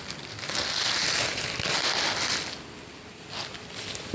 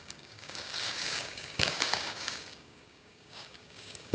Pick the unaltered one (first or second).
first